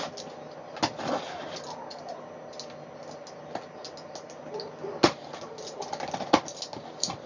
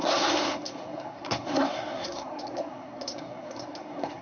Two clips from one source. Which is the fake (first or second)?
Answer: second